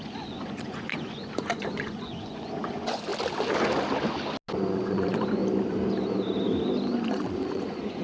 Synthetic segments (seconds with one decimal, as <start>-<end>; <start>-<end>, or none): 0.0-3.1; 4.7-5.4; 7.1-8.0